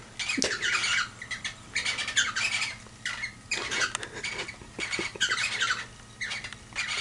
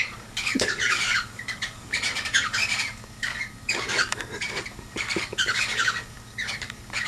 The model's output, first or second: second